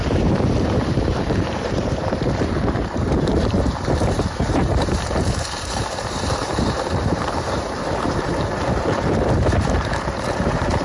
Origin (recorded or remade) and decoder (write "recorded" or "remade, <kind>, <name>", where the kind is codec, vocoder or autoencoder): remade, vocoder, BigVGAN v2